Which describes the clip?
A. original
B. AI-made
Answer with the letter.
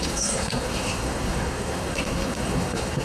B